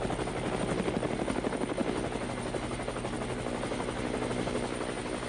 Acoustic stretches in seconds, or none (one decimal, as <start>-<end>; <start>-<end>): 0.0-5.3